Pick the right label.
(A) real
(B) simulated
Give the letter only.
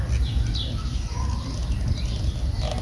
A